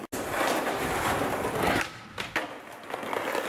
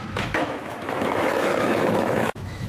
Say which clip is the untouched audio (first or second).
first